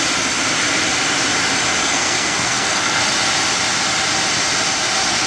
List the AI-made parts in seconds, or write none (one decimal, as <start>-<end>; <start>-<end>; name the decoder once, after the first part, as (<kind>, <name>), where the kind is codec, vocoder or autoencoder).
1.8-3.0 (codec, SNAC)

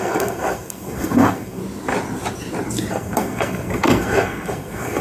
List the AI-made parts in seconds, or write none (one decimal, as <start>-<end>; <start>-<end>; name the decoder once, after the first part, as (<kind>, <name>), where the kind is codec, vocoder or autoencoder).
0.0-1.6 (codec, SNAC); 2.9-5.0

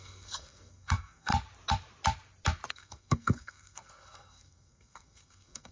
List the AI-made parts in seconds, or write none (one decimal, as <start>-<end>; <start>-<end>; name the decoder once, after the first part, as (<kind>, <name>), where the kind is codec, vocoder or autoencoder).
0.0-1.3 (codec, SNAC); 2.7-5.7